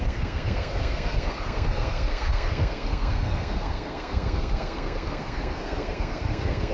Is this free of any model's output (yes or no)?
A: no